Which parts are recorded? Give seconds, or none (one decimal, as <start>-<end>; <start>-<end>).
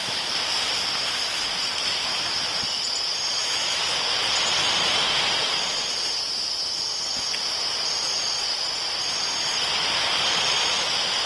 0.0-3.4; 4.0-11.3